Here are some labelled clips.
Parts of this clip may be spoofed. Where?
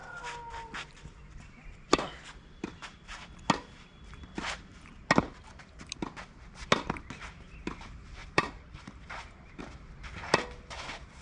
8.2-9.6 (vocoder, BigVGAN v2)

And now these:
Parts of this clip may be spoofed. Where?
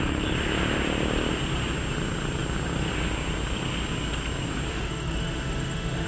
4.7-6.1 (autoencoder, DAC-VAE)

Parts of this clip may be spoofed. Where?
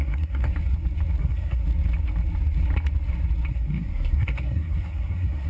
0.0-0.5 (codec, SNAC); 1.2-1.6; 3.5-5.5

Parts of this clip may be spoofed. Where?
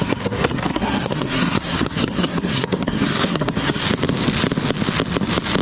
0.0-3.8 (codec, SNAC)